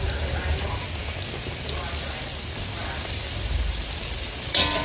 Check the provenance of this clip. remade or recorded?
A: recorded